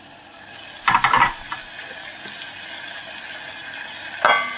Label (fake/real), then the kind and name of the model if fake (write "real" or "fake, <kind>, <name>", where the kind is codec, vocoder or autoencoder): real